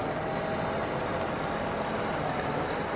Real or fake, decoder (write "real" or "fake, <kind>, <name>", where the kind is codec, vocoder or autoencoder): real